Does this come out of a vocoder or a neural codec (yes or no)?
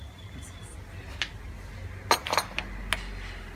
no